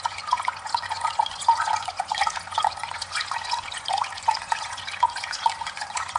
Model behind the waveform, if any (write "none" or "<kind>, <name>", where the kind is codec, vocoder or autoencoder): vocoder, Vocos